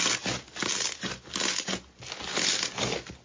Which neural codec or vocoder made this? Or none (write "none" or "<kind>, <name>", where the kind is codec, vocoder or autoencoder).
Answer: none